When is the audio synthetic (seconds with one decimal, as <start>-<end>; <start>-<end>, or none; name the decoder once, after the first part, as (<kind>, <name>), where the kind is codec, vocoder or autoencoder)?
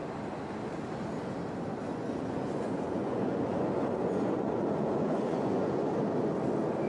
1.8-5.9 (vocoder, Vocos)